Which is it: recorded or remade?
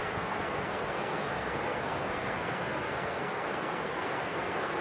remade